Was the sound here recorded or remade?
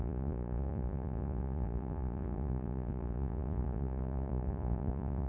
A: remade